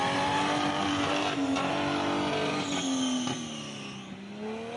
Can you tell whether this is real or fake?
real